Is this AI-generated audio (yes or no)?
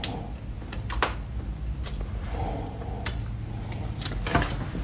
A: no